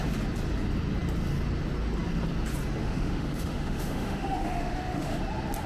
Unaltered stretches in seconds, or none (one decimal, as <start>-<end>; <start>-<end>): 0.0-2.8; 5.2-5.7